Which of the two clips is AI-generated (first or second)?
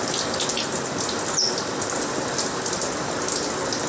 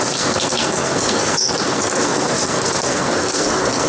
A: second